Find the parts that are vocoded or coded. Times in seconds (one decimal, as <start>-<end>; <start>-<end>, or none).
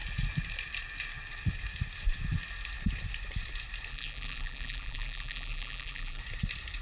3.9-6.2